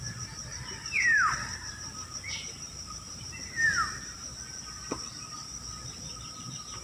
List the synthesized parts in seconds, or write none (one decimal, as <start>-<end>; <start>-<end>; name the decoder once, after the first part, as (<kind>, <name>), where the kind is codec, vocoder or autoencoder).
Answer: 0.5-4.3 (vocoder, BigVGAN v2)